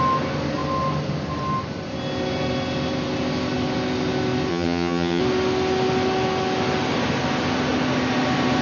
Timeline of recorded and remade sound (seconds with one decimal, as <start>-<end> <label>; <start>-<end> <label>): 0.0-4.5 recorded; 4.5-5.2 remade; 5.2-8.6 recorded